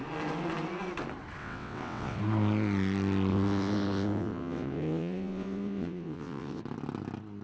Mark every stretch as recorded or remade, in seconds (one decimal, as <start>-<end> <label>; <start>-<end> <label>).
0.0-1.4 recorded; 1.4-2.2 remade; 2.2-3.3 recorded; 3.3-6.6 remade; 6.6-7.4 recorded